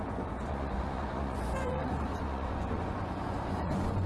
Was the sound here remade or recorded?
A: remade